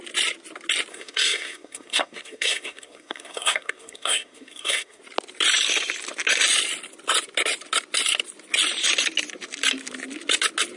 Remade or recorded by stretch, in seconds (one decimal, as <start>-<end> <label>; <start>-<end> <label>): 0.0-0.9 recorded; 0.9-5.0 remade; 5.0-10.8 recorded